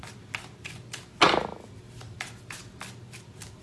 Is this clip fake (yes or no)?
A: no